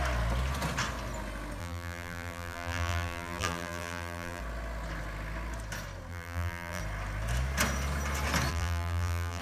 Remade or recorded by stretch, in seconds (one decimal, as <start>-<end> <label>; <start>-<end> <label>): 0.0-1.6 recorded; 1.6-4.4 remade; 4.4-6.1 recorded; 6.1-6.8 remade; 6.8-8.5 recorded; 8.5-9.4 remade